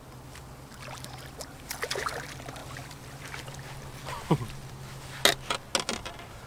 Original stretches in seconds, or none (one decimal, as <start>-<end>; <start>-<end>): 0.0-6.5